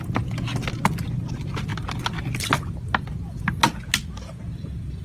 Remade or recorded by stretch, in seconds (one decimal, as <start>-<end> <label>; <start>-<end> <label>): 0.0-5.0 recorded